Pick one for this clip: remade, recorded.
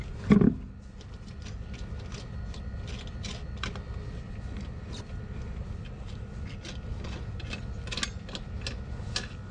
recorded